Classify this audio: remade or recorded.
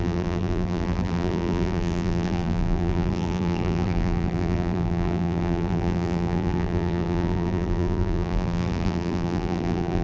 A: remade